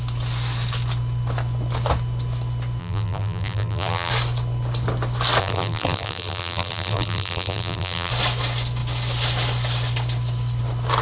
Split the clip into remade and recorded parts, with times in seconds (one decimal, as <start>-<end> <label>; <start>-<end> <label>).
0.0-2.8 recorded; 2.8-4.1 remade; 4.1-5.4 recorded; 5.4-8.1 remade; 8.1-11.0 recorded